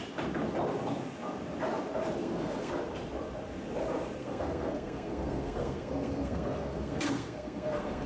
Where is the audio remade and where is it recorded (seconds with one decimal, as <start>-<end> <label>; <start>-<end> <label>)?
0.0-2.2 recorded; 2.2-2.7 remade; 2.7-4.2 recorded; 4.2-8.1 remade